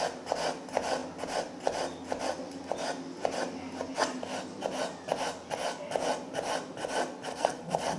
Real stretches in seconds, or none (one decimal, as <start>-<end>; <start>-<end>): 0.0-7.3